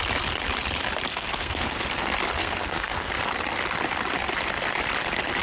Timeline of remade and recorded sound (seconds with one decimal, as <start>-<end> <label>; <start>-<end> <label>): 0.0-1.1 recorded; 1.1-1.8 remade; 1.8-2.4 recorded; 2.4-3.1 remade; 3.1-5.4 recorded

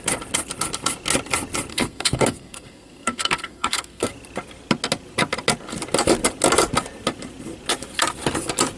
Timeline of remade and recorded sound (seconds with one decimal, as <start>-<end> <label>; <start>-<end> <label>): 0.0-1.7 recorded; 1.7-4.1 remade; 4.1-8.8 recorded

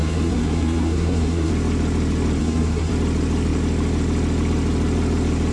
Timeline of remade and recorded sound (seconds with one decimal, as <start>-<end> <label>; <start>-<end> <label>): 0.0-1.5 remade; 1.5-2.4 recorded; 2.4-2.9 remade; 2.9-5.5 recorded

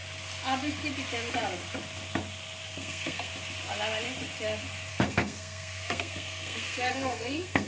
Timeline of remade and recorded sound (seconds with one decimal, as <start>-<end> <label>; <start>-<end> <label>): 0.0-2.7 recorded; 2.7-3.3 remade; 3.3-4.9 recorded; 4.9-7.7 remade

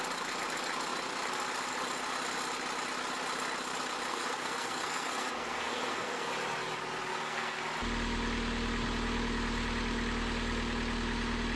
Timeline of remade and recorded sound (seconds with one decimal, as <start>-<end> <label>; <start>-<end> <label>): 0.0-4.1 recorded; 4.1-6.3 remade; 6.3-7.1 recorded; 7.1-7.6 remade; 7.6-11.6 recorded

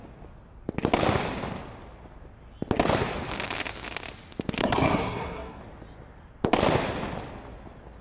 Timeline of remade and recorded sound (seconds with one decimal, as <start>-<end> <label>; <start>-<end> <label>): 0.0-4.6 recorded; 4.6-5.6 remade; 5.6-8.0 recorded

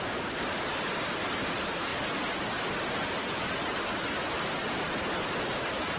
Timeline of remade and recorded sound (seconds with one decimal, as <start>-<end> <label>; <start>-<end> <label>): 0.0-6.0 recorded

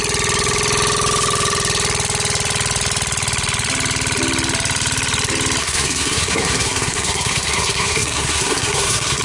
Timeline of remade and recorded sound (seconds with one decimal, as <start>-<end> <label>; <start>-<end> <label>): 0.0-5.6 recorded; 5.6-9.2 remade